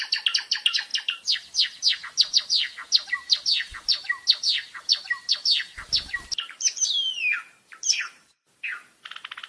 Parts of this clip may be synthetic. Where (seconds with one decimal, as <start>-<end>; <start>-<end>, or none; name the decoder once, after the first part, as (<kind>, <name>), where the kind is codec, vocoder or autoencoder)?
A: none

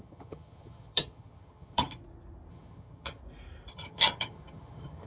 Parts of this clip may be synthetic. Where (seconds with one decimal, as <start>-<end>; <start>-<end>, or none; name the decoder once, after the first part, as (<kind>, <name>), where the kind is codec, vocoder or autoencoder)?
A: 0.0-2.0 (vocoder, HiFi-GAN); 2.5-3.2; 3.7-5.1

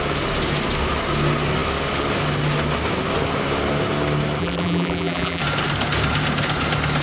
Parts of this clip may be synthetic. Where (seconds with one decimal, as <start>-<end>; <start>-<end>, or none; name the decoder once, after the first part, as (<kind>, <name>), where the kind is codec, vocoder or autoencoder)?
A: 4.4-5.4 (vocoder, BigVGAN v2)